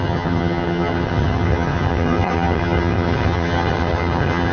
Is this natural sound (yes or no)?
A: no